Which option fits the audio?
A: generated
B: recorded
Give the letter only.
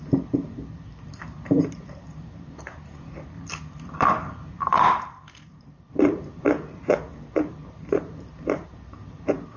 A